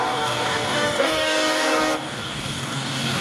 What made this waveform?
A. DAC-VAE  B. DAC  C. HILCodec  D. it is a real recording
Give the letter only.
B